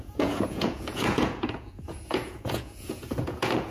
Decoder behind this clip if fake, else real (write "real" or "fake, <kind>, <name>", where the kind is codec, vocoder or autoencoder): fake, vocoder, Vocos